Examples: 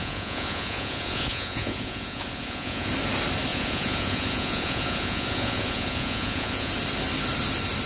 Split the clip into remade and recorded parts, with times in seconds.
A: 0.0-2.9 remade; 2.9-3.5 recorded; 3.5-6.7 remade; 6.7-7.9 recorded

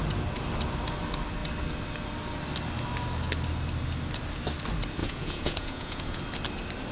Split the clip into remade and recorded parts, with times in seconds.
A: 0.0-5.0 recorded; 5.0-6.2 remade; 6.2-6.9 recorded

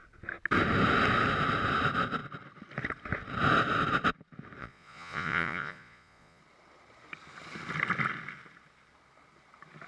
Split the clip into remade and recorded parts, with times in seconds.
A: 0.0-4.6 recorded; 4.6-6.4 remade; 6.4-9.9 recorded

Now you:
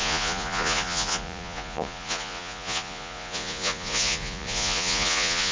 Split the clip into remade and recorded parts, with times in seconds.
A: 0.0-5.5 remade

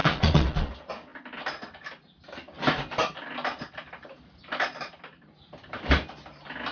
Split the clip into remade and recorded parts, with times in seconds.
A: 0.0-0.7 remade; 0.7-6.7 recorded

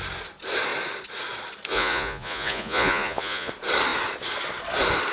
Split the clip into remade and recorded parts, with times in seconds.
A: 0.0-1.7 recorded; 1.7-3.5 remade; 3.5-5.1 recorded

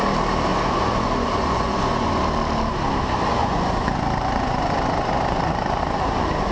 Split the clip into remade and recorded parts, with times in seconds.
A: 0.0-0.5 recorded; 0.5-2.2 remade; 2.2-3.4 recorded; 3.4-5.8 remade; 5.8-6.5 recorded

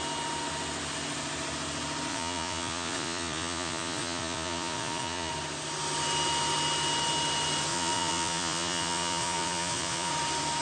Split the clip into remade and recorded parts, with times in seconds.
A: 0.0-2.1 recorded; 2.1-5.3 remade; 5.3-7.7 recorded; 7.7-10.1 remade; 10.1-10.6 recorded